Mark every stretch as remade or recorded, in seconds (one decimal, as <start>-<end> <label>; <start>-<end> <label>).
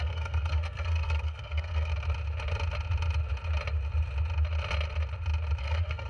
0.0-1.9 remade; 1.9-5.6 recorded; 5.6-6.1 remade